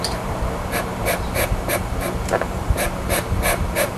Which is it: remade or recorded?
remade